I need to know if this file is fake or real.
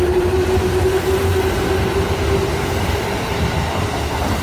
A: real